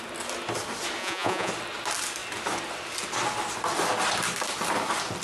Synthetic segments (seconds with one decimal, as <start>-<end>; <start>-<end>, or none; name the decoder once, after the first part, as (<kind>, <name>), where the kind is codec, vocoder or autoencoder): 1.0-1.5 (vocoder, Vocos)